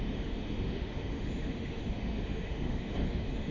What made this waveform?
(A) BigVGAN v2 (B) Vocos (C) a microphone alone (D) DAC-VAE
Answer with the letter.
D